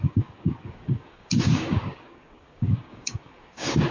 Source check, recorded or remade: remade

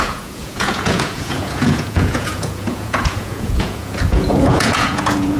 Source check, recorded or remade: remade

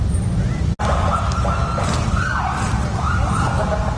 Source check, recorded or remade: recorded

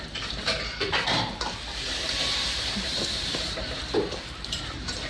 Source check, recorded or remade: remade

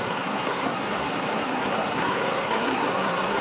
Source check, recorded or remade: remade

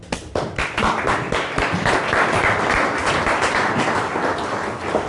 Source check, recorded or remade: remade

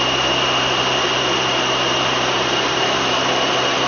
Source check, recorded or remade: recorded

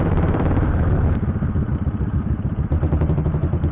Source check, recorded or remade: remade